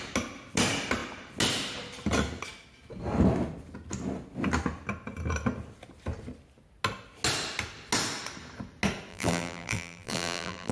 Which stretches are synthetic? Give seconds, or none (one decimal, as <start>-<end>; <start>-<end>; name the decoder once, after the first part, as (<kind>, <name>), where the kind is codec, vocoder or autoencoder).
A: 9.1-10.7 (vocoder, BigVGAN v2)